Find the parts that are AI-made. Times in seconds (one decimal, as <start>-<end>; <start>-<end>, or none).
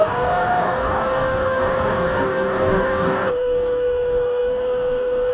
0.0-5.3